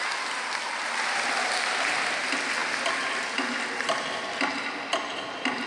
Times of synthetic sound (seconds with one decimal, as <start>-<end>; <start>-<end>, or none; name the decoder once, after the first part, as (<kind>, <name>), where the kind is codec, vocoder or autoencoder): none